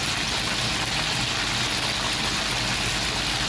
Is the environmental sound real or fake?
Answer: real